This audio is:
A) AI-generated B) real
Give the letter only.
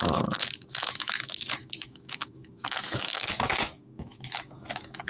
A